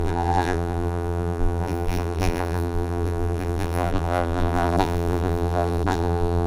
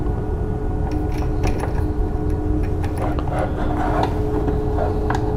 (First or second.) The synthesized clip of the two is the first